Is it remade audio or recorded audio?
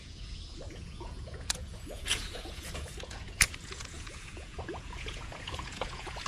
remade